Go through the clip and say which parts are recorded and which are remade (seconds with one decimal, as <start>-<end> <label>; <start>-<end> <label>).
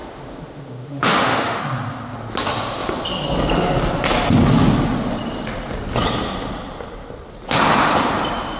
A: 0.0-1.6 remade; 1.6-8.6 recorded